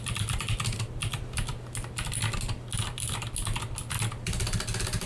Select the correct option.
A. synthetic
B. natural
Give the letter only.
B